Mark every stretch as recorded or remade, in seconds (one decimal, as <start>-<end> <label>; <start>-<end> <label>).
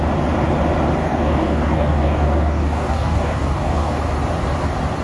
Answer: 0.0-1.0 recorded; 1.0-4.0 remade; 4.0-5.0 recorded